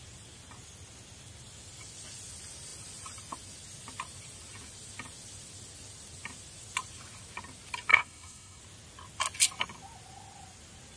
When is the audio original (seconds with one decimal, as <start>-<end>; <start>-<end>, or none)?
0.0-7.9; 8.6-11.0